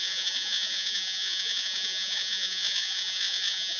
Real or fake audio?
fake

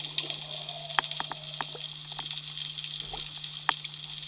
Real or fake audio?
real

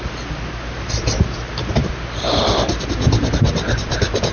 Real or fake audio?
real